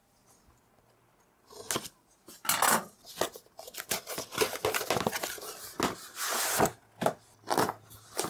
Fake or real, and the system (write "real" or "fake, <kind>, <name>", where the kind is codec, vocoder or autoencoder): real